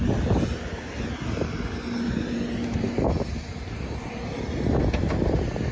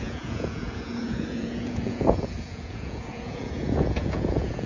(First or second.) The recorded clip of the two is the first